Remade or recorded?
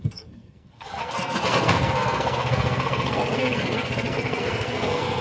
remade